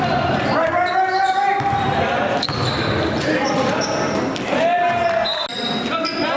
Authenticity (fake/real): real